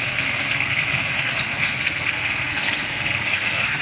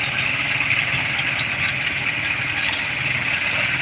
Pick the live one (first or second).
second